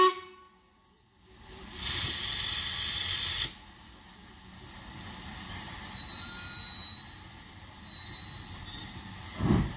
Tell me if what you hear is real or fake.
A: real